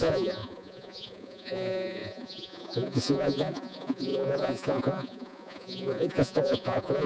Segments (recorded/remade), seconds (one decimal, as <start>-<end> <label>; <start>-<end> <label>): 0.0-7.1 remade